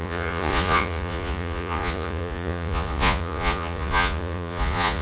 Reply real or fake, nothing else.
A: fake